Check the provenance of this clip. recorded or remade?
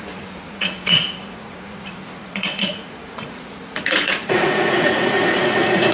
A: remade